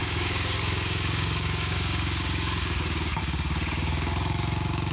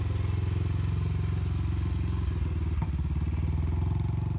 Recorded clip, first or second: second